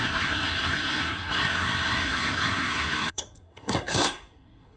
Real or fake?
fake